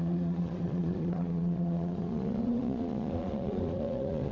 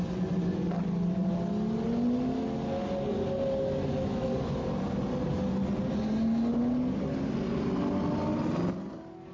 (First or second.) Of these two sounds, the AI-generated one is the first